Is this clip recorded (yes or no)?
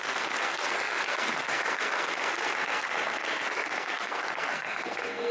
no